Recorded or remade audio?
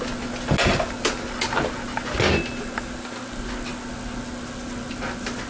recorded